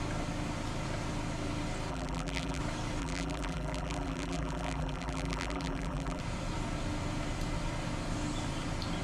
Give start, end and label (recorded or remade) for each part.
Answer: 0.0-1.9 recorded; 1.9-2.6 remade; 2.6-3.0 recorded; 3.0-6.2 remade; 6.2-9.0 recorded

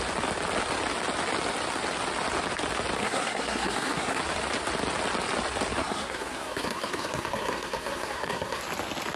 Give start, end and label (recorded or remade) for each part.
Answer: 0.0-3.0 recorded; 3.0-4.2 remade; 4.2-5.8 recorded; 5.8-8.6 remade; 8.6-9.2 recorded